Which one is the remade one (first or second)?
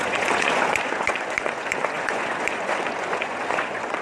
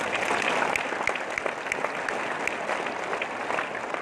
first